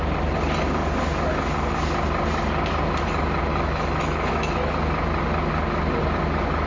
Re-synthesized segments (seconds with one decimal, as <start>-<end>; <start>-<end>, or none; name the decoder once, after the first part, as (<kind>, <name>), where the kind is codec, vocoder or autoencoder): 3.5-4.7 (autoencoder, DAC-VAE)